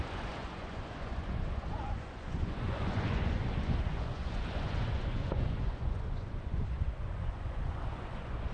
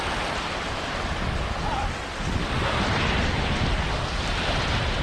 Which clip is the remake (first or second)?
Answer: first